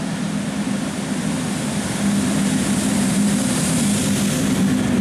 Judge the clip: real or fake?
real